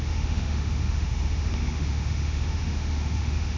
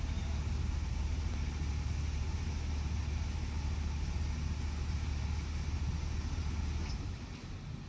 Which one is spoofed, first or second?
first